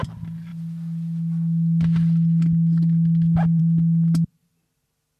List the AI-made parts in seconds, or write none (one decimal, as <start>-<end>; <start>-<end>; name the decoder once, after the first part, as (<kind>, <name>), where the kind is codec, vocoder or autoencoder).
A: none